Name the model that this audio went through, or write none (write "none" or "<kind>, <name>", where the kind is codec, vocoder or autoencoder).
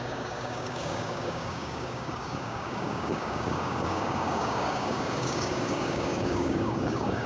codec, DAC